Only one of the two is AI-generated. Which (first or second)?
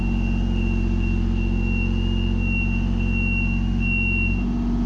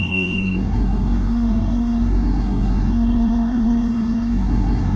second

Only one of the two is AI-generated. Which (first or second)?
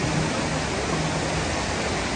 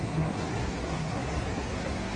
second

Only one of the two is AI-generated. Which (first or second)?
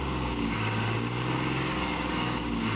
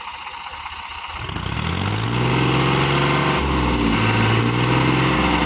first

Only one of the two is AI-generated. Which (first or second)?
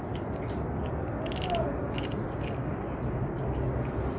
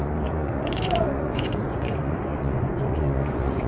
second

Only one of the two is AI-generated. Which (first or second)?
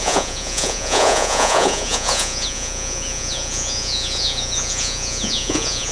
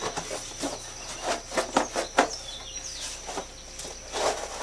first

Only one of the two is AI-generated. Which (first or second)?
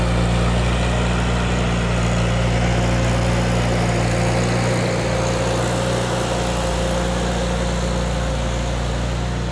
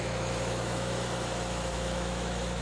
second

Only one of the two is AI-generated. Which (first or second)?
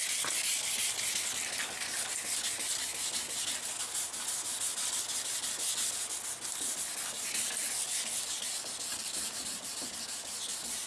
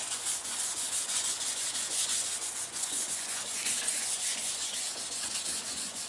second